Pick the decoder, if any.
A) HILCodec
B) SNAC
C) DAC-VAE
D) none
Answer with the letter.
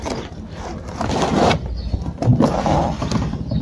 D